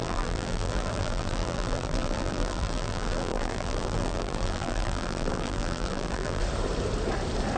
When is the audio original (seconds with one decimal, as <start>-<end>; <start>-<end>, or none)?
6.4-7.6